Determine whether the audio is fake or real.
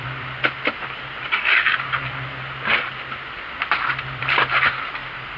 real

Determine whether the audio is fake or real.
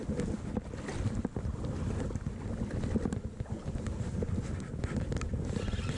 real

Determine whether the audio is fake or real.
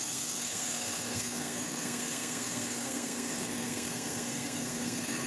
fake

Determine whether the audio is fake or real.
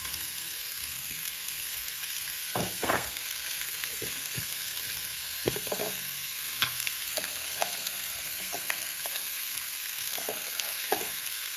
fake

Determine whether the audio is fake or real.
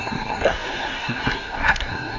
fake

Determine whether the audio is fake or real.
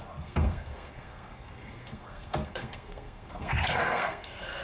fake